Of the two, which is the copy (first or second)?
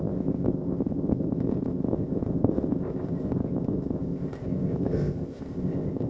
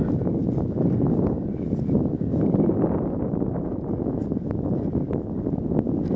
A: first